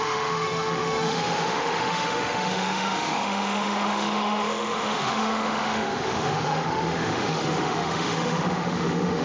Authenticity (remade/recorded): remade